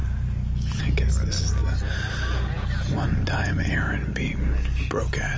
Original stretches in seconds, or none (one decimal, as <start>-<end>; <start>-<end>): 0.0-5.4